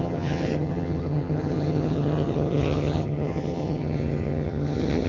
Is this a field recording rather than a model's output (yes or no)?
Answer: no